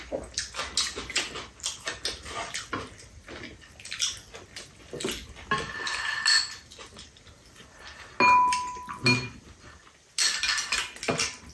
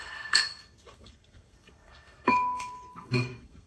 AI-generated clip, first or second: second